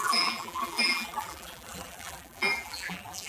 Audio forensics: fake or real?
fake